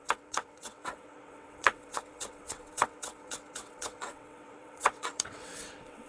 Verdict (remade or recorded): remade